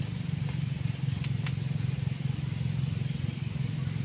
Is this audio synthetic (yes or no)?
no